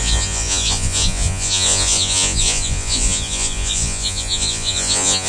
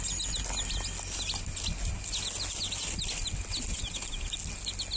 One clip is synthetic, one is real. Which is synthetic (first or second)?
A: first